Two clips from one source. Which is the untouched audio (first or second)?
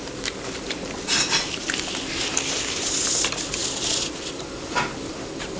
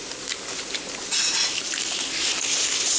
second